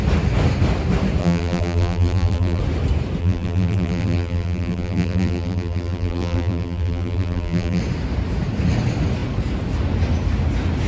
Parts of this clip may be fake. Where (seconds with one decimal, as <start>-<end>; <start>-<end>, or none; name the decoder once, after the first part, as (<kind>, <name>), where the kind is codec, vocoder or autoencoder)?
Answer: 1.2-2.6 (vocoder, BigVGAN v2); 3.2-7.8